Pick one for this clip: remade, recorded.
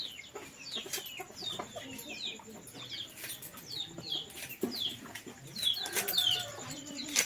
recorded